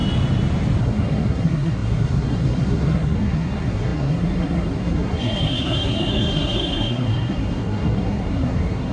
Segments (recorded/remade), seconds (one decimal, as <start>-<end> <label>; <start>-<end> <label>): 0.0-0.8 recorded; 0.8-8.9 remade